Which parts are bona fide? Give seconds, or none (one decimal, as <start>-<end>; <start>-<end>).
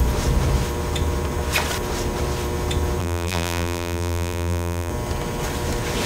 0.0-3.0; 4.9-6.1